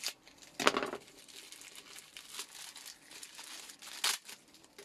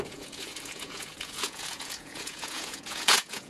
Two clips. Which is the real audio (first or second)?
first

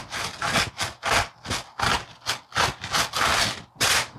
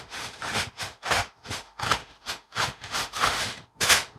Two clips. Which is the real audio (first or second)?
first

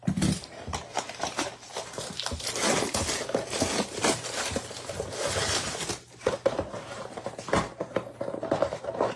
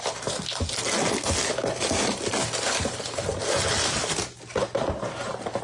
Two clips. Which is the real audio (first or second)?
second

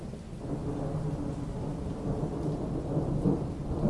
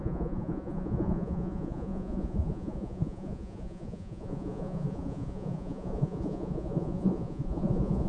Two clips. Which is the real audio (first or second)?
first